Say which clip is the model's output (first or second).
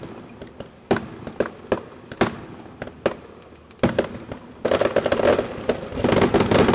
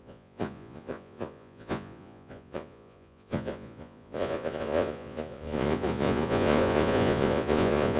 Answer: second